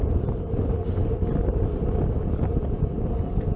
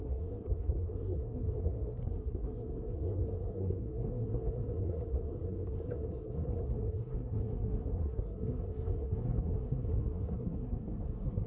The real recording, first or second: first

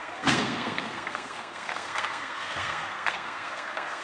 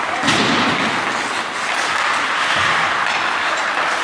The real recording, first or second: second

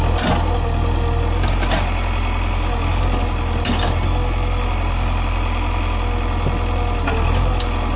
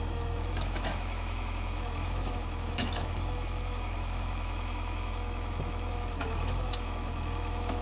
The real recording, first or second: first